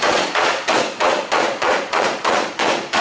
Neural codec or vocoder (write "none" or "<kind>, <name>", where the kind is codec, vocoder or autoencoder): vocoder, Vocos